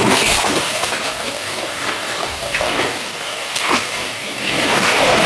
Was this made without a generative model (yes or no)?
no